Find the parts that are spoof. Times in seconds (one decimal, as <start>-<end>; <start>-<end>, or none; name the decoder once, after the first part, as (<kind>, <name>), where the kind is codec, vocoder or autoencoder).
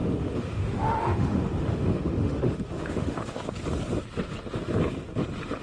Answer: 0.0-3.4 (autoencoder, DAC-VAE)